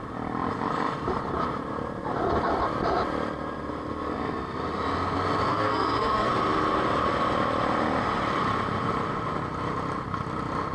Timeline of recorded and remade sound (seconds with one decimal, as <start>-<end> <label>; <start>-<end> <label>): 0.0-5.5 recorded; 5.5-6.3 remade; 6.3-10.7 recorded